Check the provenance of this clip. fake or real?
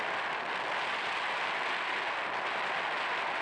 real